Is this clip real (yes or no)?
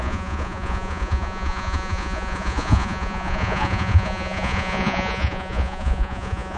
no